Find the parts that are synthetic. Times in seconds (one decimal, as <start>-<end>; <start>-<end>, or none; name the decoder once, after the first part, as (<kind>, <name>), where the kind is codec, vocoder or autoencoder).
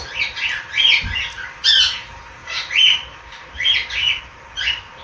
none